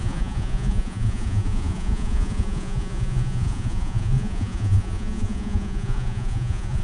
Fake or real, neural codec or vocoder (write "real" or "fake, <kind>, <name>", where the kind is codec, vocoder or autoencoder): fake, vocoder, Vocos